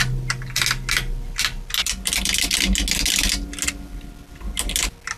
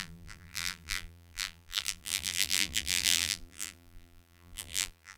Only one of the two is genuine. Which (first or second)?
first